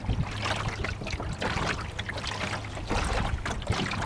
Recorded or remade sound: recorded